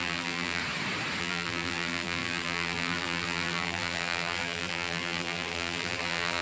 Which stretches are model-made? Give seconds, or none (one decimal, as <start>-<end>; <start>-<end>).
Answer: 0.0-0.6; 1.2-6.4